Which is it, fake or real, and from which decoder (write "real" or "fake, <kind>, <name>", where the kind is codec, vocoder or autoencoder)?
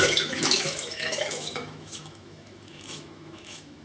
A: fake, autoencoder, DAC-VAE